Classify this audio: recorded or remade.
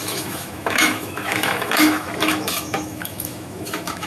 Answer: remade